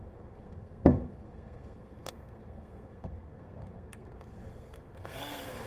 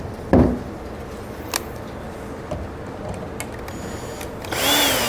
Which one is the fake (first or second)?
first